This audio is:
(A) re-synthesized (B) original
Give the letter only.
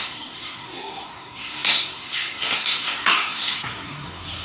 A